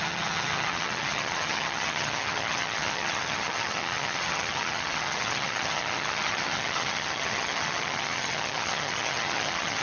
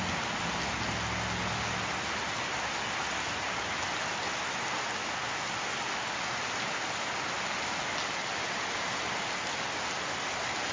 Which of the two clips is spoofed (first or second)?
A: first